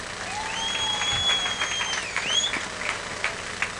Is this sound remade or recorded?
recorded